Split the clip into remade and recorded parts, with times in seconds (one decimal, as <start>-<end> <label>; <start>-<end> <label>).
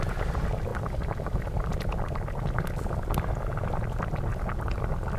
0.0-5.2 recorded